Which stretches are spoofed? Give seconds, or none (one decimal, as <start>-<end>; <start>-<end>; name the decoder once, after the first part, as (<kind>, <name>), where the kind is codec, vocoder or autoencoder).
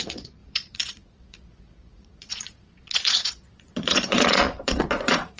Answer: 0.0-5.4 (vocoder, Vocos)